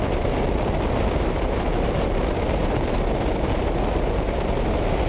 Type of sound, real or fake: real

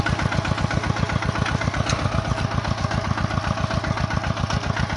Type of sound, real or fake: real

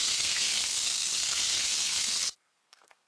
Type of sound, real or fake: fake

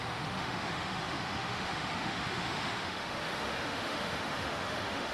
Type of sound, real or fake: fake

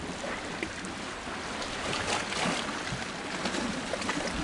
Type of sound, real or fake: real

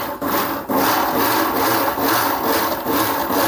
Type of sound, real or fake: real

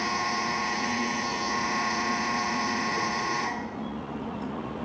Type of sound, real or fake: fake